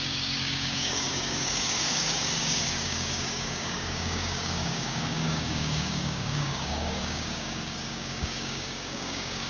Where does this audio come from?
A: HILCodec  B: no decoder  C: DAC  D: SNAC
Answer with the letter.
C